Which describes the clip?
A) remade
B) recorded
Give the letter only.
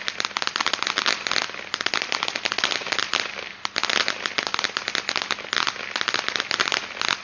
B